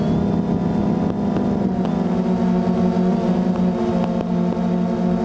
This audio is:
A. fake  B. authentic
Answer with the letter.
B